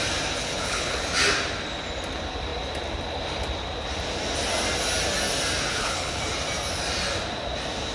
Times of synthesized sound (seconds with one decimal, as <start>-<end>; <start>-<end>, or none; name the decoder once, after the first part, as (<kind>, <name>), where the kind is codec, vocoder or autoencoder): 0.4-1.0 (codec, HILCodec); 5.7-6.2